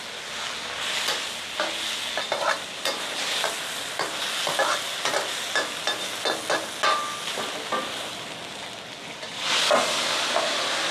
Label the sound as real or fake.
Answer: real